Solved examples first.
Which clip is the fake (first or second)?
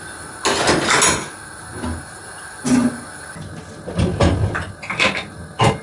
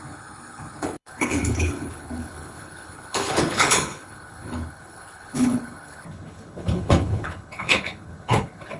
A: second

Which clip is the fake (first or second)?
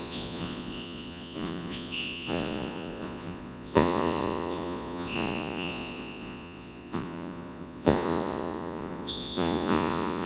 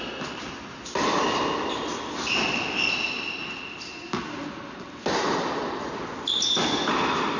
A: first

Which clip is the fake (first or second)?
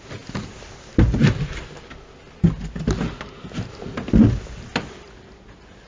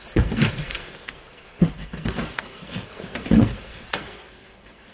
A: second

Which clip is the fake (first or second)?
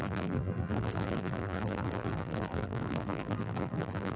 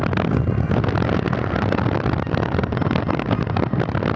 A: first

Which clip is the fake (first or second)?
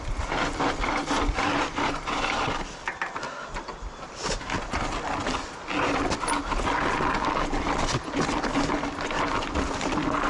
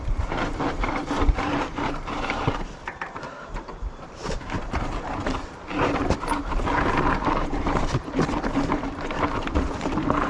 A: second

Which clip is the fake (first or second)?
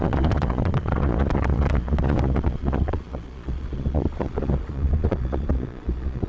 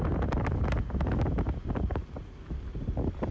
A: first